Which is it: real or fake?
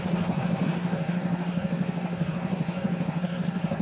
fake